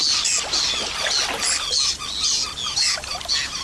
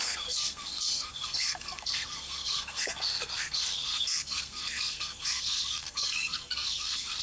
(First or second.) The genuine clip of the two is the first